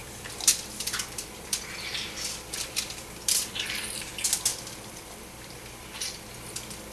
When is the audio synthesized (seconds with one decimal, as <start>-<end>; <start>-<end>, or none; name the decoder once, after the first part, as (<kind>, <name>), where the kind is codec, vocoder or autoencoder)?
0.0-4.1 (vocoder, BigVGAN v2); 4.5-6.3